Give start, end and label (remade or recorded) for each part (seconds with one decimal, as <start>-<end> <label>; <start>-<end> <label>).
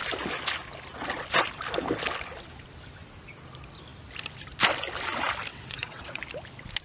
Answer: 0.0-5.5 recorded; 5.5-6.2 remade; 6.2-6.8 recorded